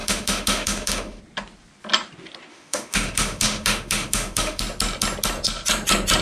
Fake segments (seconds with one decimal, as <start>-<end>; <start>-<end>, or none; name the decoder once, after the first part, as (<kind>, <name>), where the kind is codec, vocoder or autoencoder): 0.0-1.2 (autoencoder, DAC-VAE); 2.5-4.6